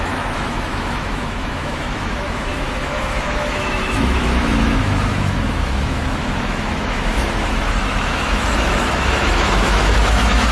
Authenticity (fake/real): fake